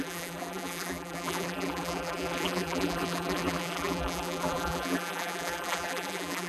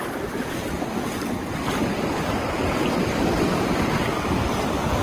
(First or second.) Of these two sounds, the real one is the second